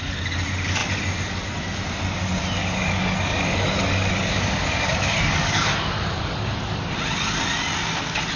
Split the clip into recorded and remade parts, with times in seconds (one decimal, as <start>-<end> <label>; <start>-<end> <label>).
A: 0.0-2.6 recorded; 2.6-6.8 remade; 6.8-8.4 recorded